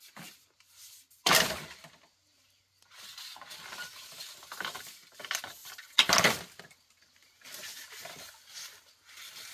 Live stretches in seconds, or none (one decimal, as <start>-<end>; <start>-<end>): 0.0-5.6; 6.6-7.2; 8.1-9.5